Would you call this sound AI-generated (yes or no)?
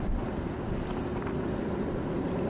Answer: no